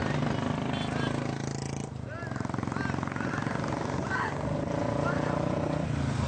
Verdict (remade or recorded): recorded